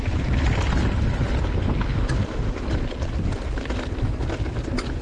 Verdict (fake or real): real